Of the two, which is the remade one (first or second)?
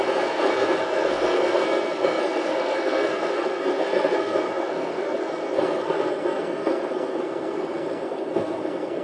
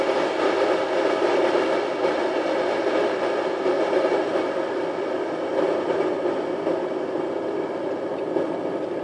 first